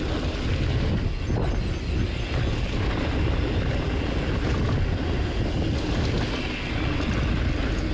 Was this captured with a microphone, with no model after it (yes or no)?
yes